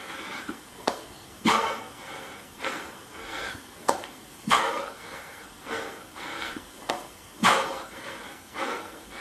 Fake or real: fake